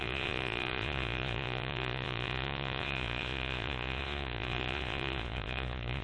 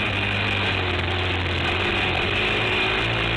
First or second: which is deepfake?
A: first